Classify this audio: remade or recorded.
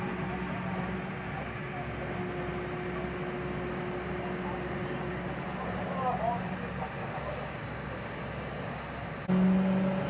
recorded